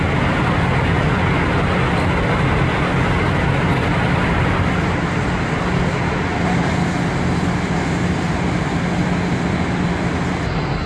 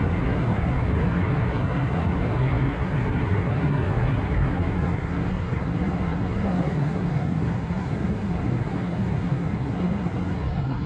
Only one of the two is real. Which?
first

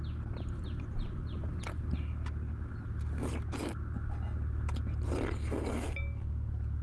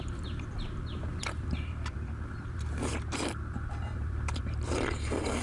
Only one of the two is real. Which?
first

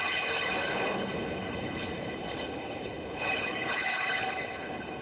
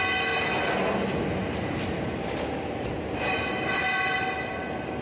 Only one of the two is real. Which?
second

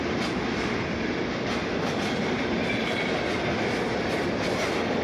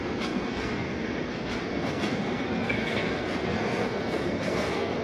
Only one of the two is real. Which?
first